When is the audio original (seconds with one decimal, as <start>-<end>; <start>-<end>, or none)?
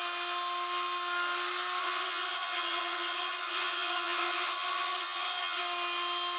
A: 0.0-1.8; 5.6-6.4